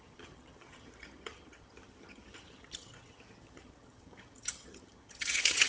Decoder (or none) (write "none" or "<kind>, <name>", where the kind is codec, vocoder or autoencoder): vocoder, HiFi-GAN